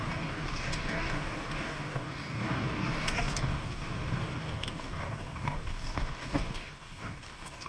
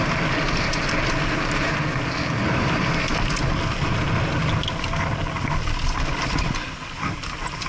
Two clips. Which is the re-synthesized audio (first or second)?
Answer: first